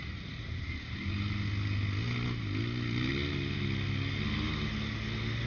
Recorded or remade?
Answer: recorded